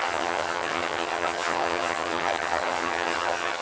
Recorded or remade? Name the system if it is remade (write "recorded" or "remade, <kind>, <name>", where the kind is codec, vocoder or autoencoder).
remade, vocoder, HiFi-GAN